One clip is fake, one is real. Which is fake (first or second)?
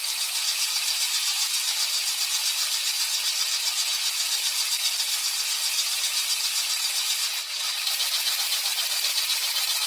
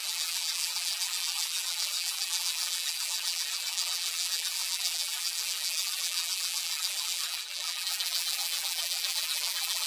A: second